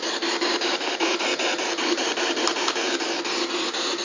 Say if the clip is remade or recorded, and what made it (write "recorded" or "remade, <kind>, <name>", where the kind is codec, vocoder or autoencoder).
remade, vocoder, BigVGAN v2